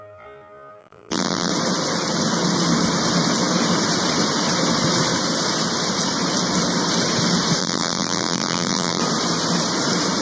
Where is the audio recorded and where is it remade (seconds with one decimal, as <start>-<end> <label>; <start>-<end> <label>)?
0.0-0.8 recorded; 0.8-1.5 remade; 1.5-7.6 recorded; 7.6-9.0 remade; 9.0-10.2 recorded